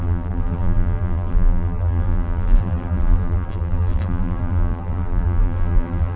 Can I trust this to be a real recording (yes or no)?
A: no